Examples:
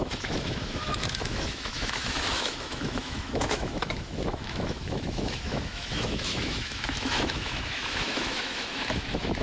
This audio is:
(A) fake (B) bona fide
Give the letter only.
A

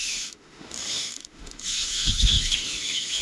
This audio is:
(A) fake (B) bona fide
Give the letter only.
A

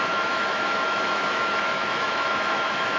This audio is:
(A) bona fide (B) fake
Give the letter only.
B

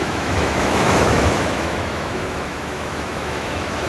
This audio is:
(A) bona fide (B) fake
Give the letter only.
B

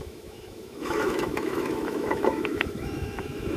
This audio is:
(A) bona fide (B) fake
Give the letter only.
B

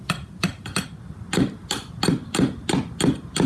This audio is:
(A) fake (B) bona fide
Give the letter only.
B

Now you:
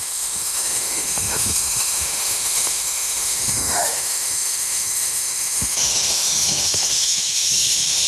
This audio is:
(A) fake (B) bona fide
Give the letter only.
A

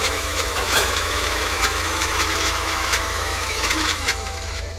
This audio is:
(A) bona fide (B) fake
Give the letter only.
B